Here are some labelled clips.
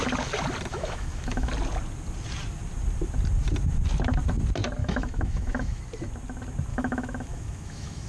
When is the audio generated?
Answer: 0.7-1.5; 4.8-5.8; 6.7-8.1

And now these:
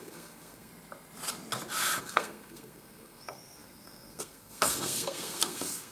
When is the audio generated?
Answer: 0.0-0.7; 2.0-5.9

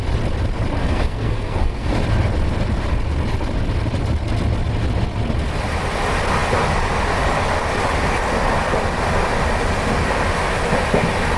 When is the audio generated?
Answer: 0.8-1.9

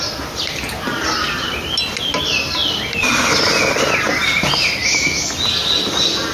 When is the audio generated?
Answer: 4.8-5.3

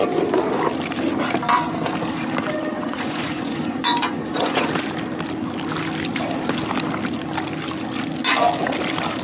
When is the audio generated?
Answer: 2.7-4.7

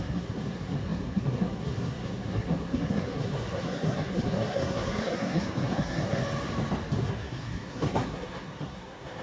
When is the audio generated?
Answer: 0.0-6.2; 7.0-9.2